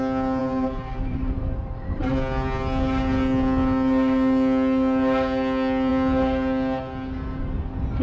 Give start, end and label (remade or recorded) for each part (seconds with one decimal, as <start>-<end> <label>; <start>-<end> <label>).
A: 0.0-0.4 recorded; 0.4-2.1 remade; 2.1-8.0 recorded